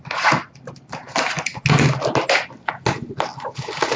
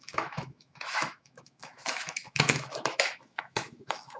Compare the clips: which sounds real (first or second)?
first